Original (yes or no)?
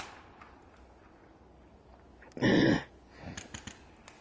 yes